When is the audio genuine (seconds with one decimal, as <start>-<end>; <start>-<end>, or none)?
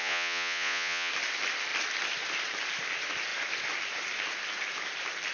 1.1-5.3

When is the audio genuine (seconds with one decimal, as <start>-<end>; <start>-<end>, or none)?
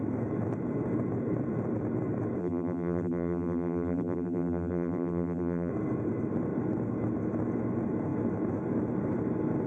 0.0-2.4; 5.7-9.7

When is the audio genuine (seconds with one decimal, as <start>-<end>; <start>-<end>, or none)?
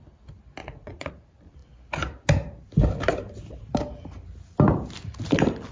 0.0-0.6; 1.1-5.7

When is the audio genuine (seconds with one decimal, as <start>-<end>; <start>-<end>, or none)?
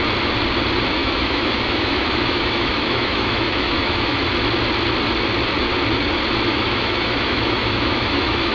0.0-1.0; 4.2-6.5